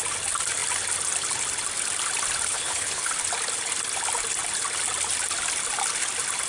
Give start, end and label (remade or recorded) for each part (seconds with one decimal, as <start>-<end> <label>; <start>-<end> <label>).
0.0-2.5 recorded; 2.5-3.1 remade; 3.1-6.5 recorded